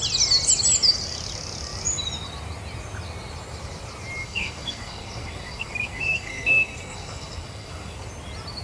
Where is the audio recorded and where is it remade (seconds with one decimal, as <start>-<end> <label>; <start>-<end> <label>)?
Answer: 0.0-4.2 recorded; 4.2-8.1 remade; 8.1-8.6 recorded